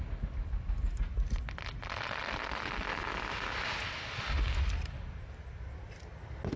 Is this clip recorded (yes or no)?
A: yes